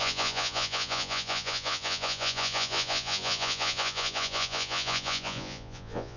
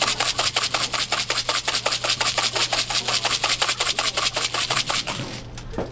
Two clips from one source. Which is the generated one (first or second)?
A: first